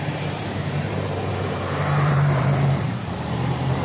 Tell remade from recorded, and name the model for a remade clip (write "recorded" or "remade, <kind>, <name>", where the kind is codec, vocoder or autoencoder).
remade, vocoder, BigVGAN v2